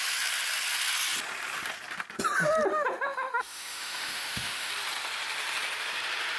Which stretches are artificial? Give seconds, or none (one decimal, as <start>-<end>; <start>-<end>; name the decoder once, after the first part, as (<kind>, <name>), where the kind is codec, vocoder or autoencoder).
2.7-4.7 (autoencoder, DAC-VAE)